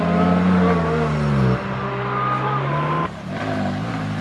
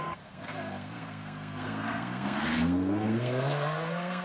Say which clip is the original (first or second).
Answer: first